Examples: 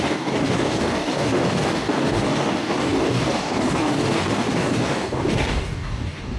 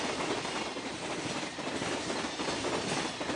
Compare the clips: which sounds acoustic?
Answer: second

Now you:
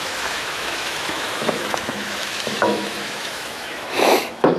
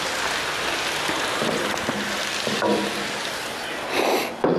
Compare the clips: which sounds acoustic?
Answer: second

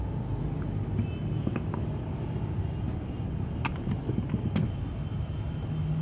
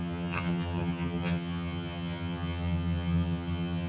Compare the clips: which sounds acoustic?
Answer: first